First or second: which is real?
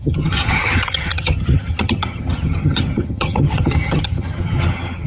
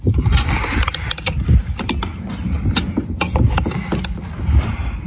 second